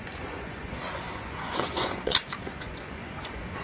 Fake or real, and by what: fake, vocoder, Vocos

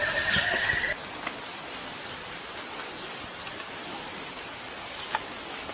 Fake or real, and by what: real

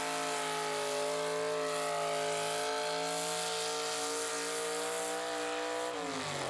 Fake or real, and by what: real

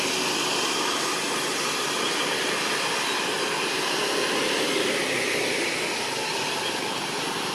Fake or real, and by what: real